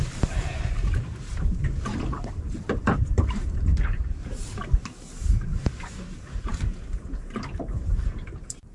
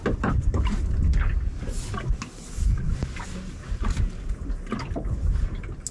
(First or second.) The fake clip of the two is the first